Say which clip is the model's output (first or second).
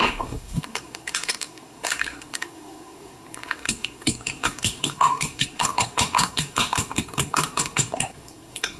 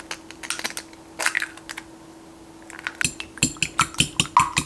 first